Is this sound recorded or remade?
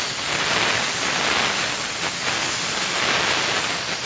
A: recorded